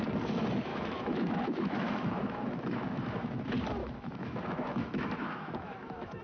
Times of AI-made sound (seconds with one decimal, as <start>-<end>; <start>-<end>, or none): 0.7-3.4; 3.8-6.2